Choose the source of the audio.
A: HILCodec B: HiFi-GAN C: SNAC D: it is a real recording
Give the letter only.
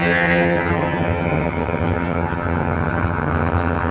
B